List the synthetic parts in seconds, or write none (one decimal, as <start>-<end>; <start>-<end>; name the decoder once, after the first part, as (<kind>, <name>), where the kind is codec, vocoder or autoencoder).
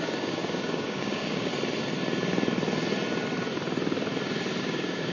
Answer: 0.0-1.5 (codec, DAC); 4.6-5.1